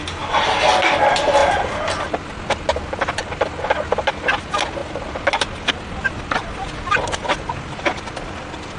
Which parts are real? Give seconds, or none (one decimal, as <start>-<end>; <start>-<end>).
0.0-8.8